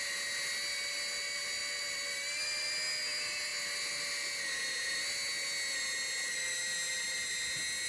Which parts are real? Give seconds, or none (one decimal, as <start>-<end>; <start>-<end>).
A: 0.0-7.9